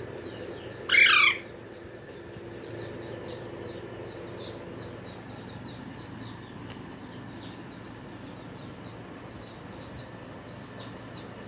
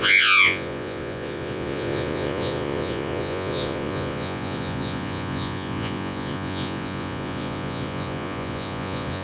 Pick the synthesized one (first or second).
second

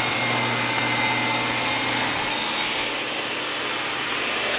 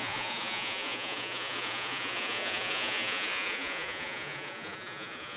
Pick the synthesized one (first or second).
second